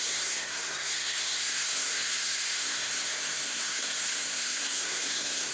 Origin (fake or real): fake